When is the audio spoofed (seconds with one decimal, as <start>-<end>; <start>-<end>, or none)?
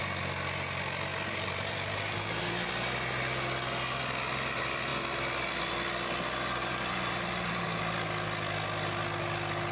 1.1-2.7; 6.6-7.8